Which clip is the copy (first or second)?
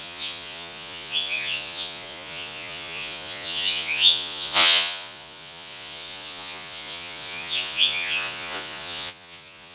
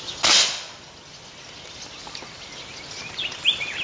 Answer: first